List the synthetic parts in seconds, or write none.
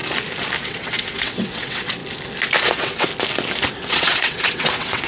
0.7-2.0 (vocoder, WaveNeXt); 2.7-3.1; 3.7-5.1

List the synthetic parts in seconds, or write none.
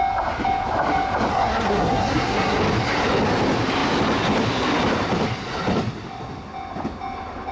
1.3-2.6 (codec, SNAC)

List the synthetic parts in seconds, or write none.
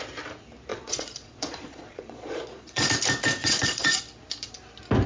0.7-2.9 (vocoder, Vocos); 3.4-4.0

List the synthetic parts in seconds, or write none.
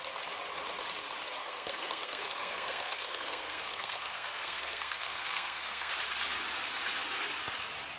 1.4-5.9 (codec, SNAC)